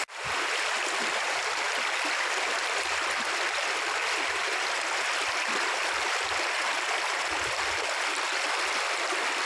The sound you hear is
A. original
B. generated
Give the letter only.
A